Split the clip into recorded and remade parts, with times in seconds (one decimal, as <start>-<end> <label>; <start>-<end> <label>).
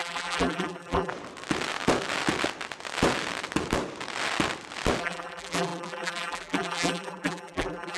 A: 0.0-1.1 remade; 1.1-5.0 recorded; 5.0-8.0 remade